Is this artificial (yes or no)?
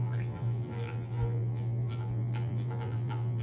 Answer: yes